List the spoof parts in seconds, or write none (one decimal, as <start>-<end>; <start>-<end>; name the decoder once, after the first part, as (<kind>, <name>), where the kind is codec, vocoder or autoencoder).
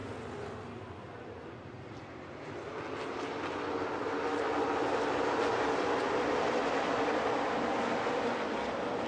none